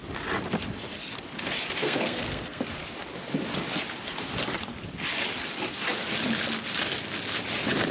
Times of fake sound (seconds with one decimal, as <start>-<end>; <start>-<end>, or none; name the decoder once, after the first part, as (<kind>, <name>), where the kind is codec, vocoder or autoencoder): 1.8-2.6 (codec, SNAC)